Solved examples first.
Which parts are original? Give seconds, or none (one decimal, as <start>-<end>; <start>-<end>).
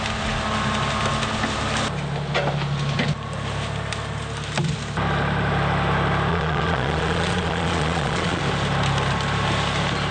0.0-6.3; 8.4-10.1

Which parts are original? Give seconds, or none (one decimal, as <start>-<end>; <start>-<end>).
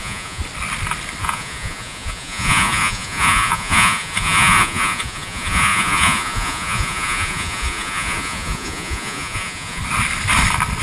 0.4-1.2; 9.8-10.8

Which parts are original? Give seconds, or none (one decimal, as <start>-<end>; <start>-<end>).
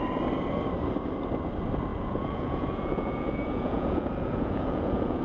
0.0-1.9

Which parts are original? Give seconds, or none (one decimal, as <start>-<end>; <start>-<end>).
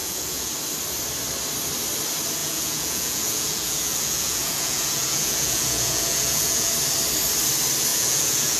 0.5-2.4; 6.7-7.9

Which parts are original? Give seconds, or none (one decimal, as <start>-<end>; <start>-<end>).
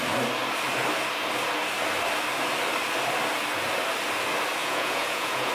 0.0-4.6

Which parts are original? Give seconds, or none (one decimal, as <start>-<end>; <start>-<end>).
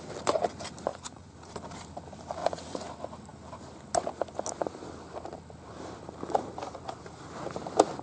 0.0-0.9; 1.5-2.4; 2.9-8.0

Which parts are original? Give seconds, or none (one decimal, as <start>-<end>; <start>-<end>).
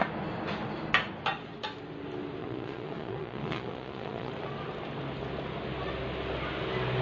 0.0-2.4; 4.3-7.0